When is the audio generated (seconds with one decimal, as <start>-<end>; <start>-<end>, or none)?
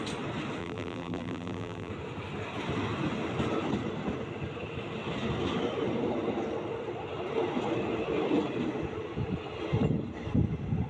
0.6-1.9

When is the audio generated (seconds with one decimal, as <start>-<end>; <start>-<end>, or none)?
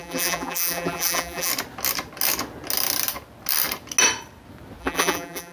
0.0-1.5; 4.8-5.5